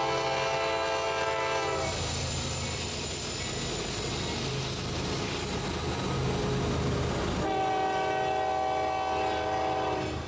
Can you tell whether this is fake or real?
real